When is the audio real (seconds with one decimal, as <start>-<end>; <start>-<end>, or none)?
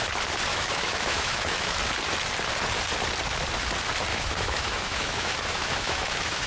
0.0-0.5; 1.8-4.1